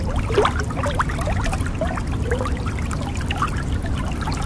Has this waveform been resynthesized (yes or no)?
no